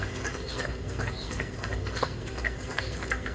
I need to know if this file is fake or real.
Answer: fake